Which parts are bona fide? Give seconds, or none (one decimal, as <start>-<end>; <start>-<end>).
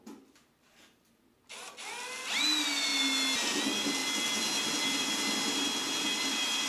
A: 0.0-6.7